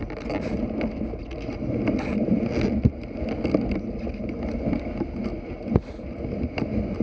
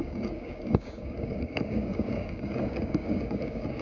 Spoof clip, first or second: second